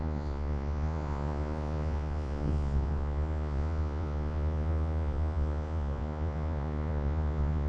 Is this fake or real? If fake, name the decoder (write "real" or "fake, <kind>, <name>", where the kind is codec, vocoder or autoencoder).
fake, vocoder, Vocos